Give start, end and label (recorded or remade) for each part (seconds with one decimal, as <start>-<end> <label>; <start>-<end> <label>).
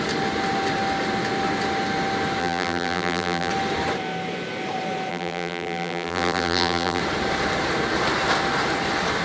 0.0-2.4 recorded; 2.4-3.5 remade; 3.5-5.1 recorded; 5.1-7.0 remade; 7.0-9.2 recorded